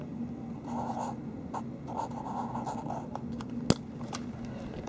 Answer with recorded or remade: recorded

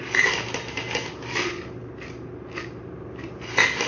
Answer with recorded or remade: recorded